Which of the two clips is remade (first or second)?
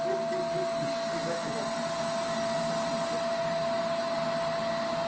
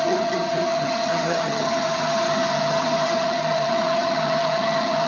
second